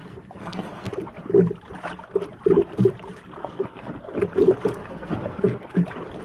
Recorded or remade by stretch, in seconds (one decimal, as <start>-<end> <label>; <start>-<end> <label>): 0.0-0.9 remade; 0.9-3.4 recorded; 3.4-4.0 remade; 4.0-4.8 recorded; 4.8-5.8 remade; 5.8-6.2 recorded

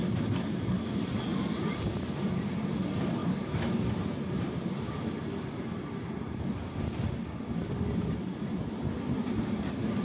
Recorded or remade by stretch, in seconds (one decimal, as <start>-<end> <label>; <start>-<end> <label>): 0.0-1.3 recorded; 1.3-1.9 remade; 1.9-3.2 recorded; 3.2-5.0 remade; 5.0-10.0 recorded

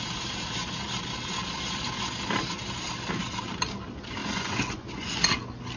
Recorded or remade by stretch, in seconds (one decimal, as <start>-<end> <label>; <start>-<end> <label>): 0.0-4.2 recorded; 4.2-5.2 remade; 5.2-5.8 recorded

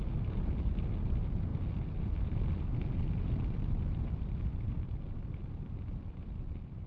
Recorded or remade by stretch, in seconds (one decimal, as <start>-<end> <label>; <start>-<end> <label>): 0.0-6.9 recorded

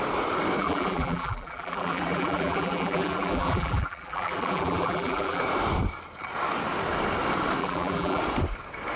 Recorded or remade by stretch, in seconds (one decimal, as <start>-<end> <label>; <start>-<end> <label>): 0.0-0.6 recorded; 0.6-5.4 remade; 5.4-7.6 recorded; 7.6-8.2 remade; 8.2-9.0 recorded

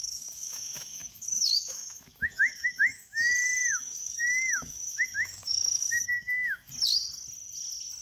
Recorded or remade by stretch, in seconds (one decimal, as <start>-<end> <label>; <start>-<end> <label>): 0.0-3.3 remade; 3.3-3.7 recorded; 3.7-6.7 remade; 6.7-8.0 recorded